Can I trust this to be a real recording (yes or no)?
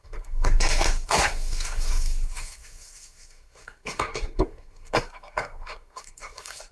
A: no